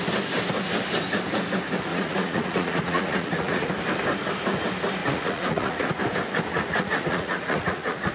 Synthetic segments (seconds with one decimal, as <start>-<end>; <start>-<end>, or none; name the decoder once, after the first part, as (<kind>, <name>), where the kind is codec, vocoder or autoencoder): 1.9-3.7 (vocoder, Vocos); 5.0-6.0; 6.5-8.1